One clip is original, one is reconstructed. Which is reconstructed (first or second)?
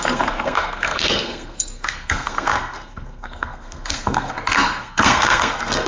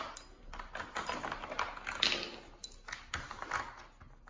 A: first